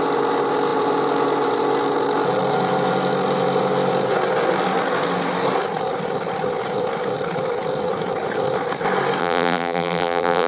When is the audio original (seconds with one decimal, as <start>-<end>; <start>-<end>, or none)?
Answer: 0.0-9.2